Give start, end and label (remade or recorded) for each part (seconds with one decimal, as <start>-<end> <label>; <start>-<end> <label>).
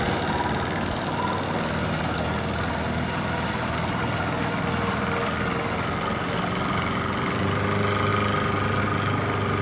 0.0-9.6 recorded